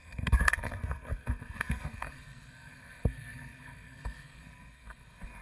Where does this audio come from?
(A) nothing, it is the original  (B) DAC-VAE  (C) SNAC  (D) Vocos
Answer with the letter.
C